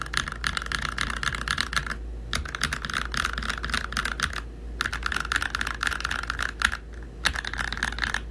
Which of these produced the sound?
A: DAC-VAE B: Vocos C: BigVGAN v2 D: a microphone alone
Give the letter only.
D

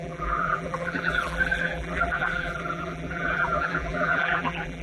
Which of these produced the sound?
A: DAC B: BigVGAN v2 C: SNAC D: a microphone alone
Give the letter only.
B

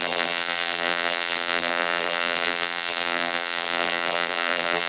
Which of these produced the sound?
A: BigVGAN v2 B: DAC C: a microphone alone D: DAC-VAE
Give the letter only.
A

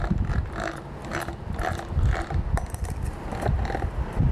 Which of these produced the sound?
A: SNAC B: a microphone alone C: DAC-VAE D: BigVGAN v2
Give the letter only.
B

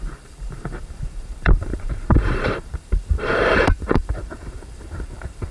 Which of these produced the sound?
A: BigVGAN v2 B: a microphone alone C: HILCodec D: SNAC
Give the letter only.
A